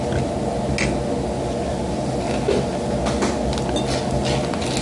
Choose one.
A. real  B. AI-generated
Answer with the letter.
A